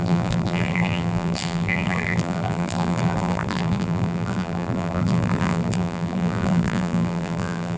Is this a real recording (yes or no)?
no